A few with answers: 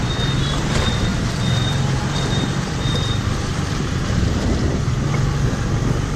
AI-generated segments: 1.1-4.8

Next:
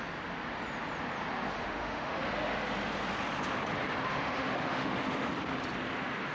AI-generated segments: 1.6-2.2; 4.1-5.3

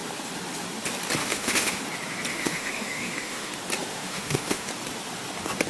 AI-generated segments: 1.2-1.8; 2.3-3.5; 3.9-4.7